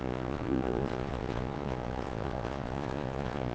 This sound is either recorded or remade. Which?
remade